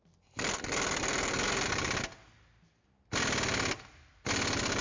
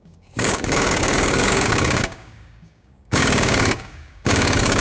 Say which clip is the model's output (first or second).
second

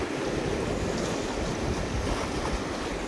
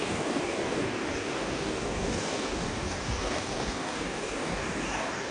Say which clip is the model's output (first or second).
second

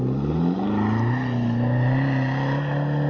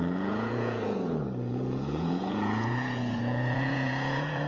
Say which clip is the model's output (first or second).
second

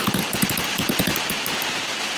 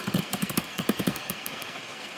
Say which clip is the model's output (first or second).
second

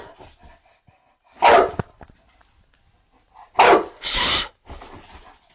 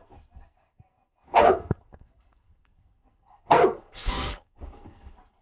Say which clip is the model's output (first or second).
second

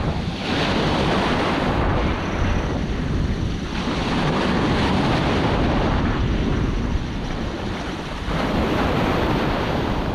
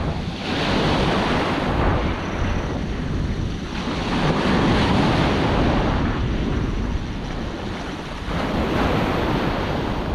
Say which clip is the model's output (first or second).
first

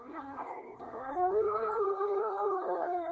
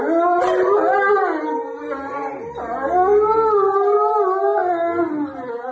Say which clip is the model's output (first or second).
first